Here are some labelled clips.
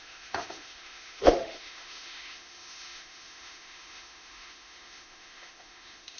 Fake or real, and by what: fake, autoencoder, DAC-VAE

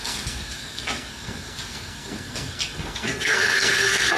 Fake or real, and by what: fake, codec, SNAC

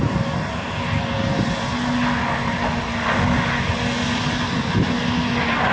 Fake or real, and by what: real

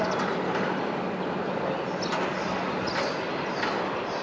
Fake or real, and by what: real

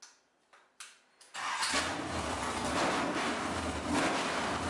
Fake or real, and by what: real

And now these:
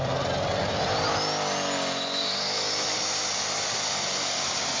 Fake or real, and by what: real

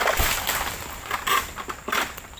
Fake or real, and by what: real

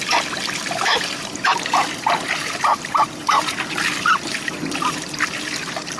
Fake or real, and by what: real